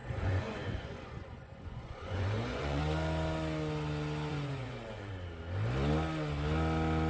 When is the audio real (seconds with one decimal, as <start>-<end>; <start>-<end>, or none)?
2.8-4.3; 5.1-7.1